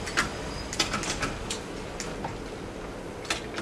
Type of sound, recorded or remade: recorded